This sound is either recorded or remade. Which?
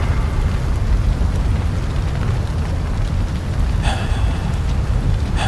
recorded